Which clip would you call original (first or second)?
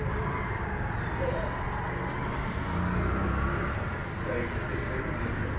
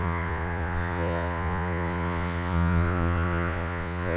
first